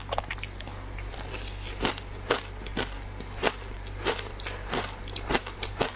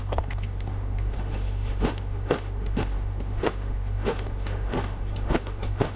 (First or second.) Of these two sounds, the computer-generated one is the second